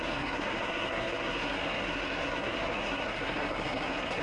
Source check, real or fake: fake